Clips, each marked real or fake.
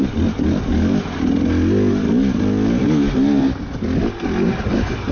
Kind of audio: real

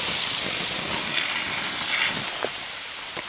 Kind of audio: real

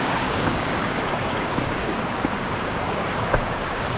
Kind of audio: fake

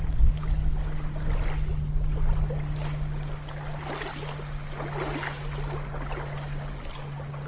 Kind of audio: real